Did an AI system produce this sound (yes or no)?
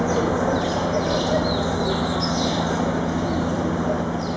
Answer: no